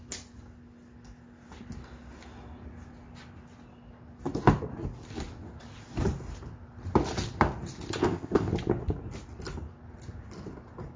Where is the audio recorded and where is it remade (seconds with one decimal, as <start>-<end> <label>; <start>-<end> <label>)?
0.0-8.0 recorded; 8.0-8.5 remade; 8.5-11.0 recorded